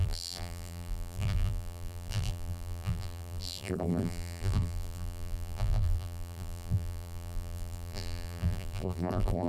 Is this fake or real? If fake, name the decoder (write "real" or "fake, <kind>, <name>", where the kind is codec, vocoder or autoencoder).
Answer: fake, vocoder, BigVGAN v2